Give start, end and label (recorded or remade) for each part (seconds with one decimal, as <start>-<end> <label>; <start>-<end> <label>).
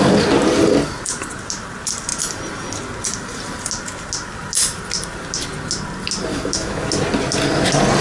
0.0-6.3 recorded; 6.3-6.9 remade; 6.9-8.0 recorded